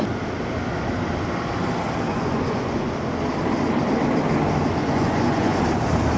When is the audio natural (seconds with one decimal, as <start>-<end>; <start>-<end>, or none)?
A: 0.0-2.1; 2.9-4.8; 5.6-6.2

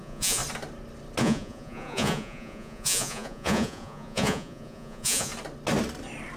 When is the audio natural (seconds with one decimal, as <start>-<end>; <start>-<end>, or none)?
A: 0.4-1.2; 5.3-6.4